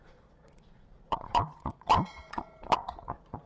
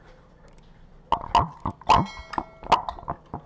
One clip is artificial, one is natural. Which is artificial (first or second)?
first